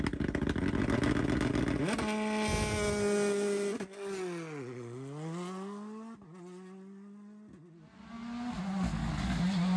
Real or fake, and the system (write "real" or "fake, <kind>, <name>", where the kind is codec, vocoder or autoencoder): real